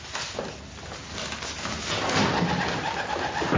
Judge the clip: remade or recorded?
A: recorded